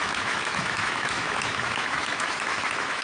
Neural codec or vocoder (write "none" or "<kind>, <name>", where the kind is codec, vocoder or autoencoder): autoencoder, DAC-VAE